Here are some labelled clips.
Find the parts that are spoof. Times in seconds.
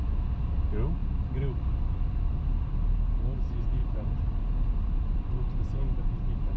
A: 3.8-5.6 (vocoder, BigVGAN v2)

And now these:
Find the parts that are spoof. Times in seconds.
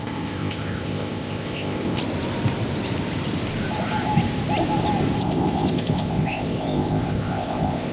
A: 0.0-2.0 (codec, ZipCodec); 5.2-7.9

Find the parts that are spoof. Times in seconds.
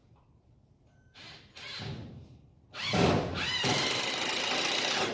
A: none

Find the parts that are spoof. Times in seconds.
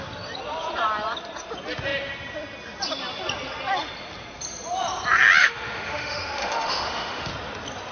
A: 5.4-7.3 (autoencoder, DAC-VAE)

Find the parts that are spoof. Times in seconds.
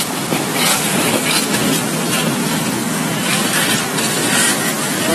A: 0.7-1.7 (codec, DAC); 2.4-3.6; 4.2-5.1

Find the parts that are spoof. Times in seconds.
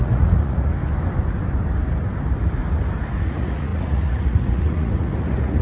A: 0.0-0.7 (vocoder, Vocos); 3.2-5.6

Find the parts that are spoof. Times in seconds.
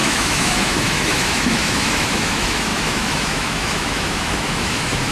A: 0.0-5.1 (autoencoder, DAC-VAE)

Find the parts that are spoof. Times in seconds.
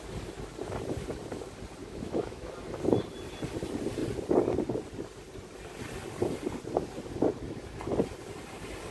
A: 1.8-2.5 (autoencoder, DAC-VAE)